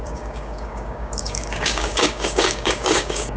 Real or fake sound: fake